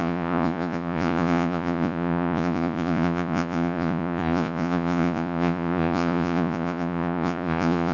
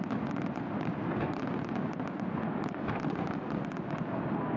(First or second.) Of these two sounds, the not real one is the first